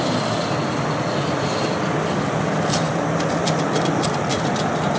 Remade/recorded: remade